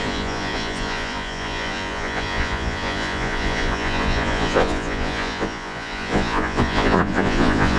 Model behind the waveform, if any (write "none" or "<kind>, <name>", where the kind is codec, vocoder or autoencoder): vocoder, Vocos